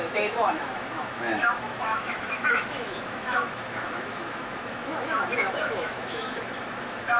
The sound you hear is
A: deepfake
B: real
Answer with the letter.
A